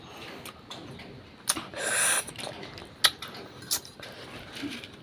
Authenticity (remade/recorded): recorded